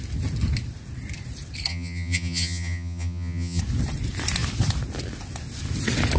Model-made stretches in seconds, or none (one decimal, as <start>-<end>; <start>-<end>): 1.7-3.6

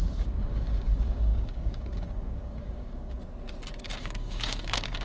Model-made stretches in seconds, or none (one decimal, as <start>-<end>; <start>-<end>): 0.0-3.2; 3.8-5.0

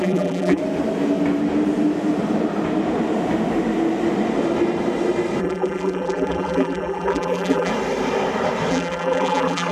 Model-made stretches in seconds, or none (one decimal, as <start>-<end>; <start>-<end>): 0.0-0.6; 5.4-7.7; 8.7-9.7